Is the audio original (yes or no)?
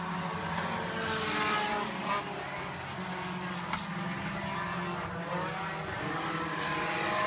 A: yes